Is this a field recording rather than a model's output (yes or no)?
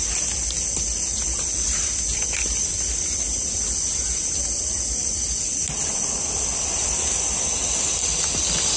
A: yes